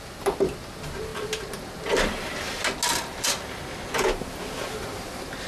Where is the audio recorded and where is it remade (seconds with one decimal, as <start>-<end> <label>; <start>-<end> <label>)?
0.0-5.5 recorded